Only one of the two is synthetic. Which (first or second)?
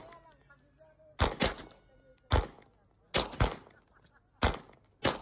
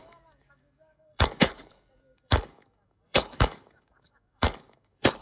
second